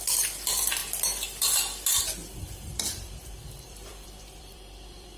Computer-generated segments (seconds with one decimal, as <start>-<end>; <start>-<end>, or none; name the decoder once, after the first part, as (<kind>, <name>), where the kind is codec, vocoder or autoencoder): 2.4-5.2 (vocoder, BigVGAN v2)